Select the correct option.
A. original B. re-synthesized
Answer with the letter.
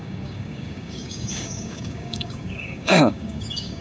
B